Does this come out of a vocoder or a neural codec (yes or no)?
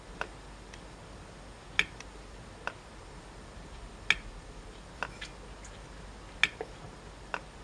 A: no